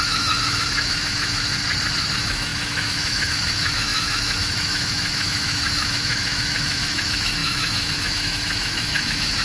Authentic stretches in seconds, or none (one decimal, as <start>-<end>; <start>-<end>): 1.5-2.1